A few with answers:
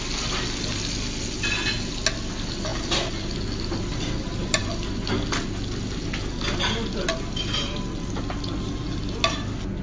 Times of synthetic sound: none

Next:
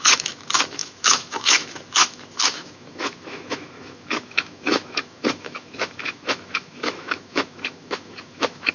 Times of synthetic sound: 0.0-8.7 (autoencoder, DAC-VAE)

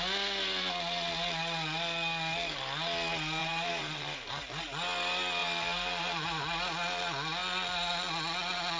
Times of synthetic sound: 3.4-4.3 (vocoder, BigVGAN v2); 5.4-6.4

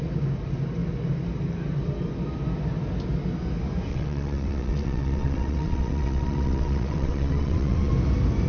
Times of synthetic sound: 3.9-7.9 (vocoder, WaveNeXt)

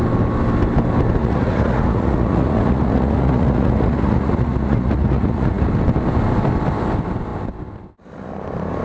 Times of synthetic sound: 1.2-5.7 (vocoder, Vocos)